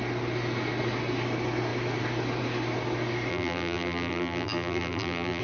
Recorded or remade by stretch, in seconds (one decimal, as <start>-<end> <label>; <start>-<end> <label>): 0.0-3.3 recorded; 3.3-5.4 remade